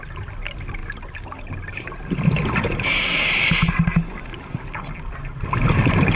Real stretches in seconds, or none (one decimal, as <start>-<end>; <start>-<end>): 0.0-6.2